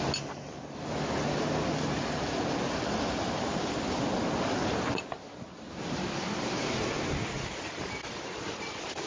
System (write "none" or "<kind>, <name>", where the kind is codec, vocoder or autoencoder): none